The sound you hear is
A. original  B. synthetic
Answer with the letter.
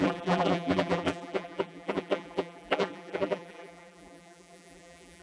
B